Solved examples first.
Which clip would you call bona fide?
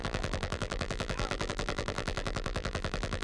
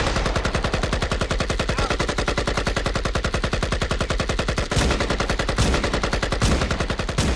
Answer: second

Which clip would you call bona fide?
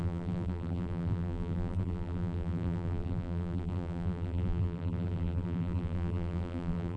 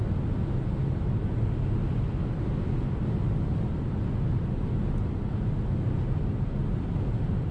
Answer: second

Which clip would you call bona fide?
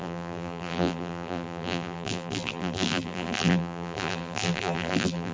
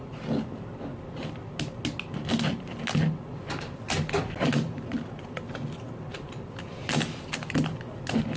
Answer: second